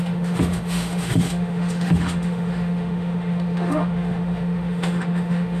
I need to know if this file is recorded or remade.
remade